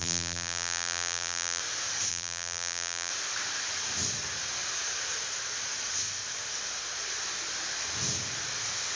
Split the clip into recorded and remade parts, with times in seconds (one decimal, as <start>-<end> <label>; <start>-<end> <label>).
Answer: 0.0-1.6 remade; 1.6-2.1 recorded; 2.1-3.1 remade; 3.1-9.0 recorded